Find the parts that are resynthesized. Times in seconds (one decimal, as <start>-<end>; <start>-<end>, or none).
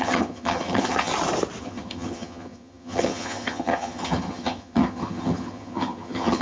0.0-1.1; 1.6-6.4